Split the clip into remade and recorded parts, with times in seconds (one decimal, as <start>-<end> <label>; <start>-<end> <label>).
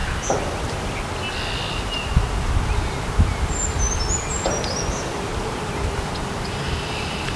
0.0-7.4 recorded